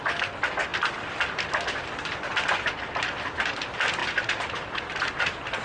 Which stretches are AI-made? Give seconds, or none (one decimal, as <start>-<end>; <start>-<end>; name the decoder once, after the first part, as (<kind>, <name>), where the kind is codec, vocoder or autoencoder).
none